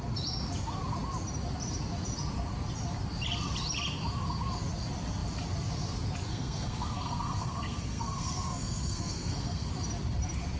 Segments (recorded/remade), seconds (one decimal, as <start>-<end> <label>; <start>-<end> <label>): 0.0-6.3 recorded; 6.3-9.7 remade; 9.7-10.6 recorded